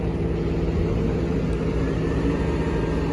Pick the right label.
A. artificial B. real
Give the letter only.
B